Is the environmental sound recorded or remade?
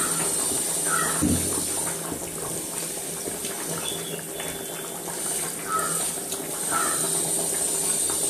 recorded